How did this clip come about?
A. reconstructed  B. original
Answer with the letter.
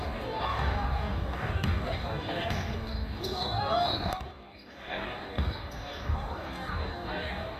A